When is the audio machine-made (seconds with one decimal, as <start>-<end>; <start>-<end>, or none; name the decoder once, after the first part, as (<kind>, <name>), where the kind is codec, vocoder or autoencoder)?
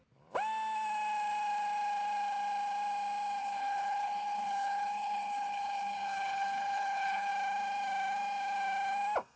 3.4-7.3 (codec, HILCodec)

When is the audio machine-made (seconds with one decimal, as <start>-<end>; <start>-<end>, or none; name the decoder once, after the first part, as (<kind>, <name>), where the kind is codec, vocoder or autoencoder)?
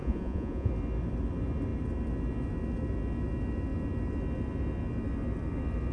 0.0-0.7 (vocoder, Vocos)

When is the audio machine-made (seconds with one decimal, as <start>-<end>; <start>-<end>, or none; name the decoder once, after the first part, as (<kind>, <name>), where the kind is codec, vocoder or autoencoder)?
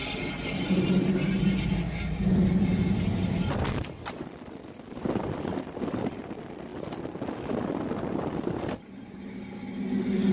none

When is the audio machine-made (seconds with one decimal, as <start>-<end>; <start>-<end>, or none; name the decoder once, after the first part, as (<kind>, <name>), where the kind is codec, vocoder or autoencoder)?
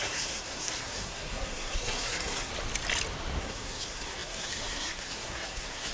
0.0-2.5 (codec, SNAC); 3.4-5.9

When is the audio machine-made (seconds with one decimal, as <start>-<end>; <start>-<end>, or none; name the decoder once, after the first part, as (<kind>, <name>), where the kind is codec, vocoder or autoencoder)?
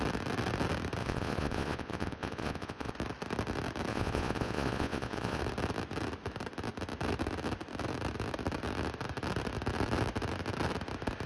1.0-2.9 (vocoder, Vocos); 3.9-5.4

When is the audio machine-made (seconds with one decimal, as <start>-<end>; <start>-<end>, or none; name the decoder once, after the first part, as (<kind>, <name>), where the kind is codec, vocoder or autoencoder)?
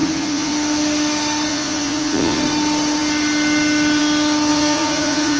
0.0-0.5 (vocoder, Vocos); 1.5-2.4; 4.5-5.4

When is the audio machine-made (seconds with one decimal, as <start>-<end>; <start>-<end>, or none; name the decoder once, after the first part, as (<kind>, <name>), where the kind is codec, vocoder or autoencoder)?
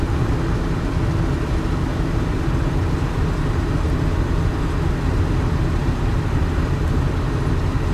none